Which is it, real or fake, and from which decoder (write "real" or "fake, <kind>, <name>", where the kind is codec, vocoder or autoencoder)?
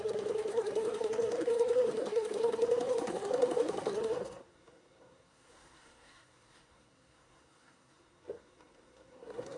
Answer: fake, codec, SNAC